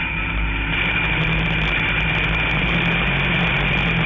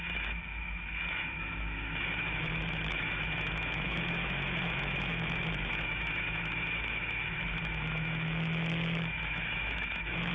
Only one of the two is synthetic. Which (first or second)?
second